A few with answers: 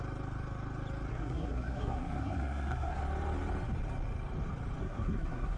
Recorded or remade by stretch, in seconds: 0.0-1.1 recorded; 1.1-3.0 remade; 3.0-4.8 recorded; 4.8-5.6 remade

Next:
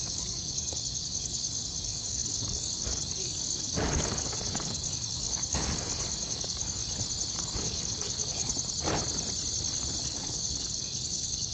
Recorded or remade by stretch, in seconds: 0.0-6.8 remade; 6.8-7.3 recorded; 7.3-8.5 remade; 8.5-10.0 recorded; 10.0-11.5 remade

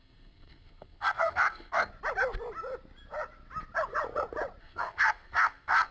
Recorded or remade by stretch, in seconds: 0.0-1.9 remade; 1.9-4.6 recorded; 4.6-5.9 remade